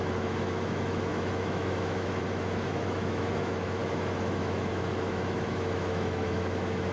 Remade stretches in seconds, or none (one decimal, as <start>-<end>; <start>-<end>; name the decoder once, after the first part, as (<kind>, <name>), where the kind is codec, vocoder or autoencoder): 0.0-6.9 (autoencoder, DAC-VAE)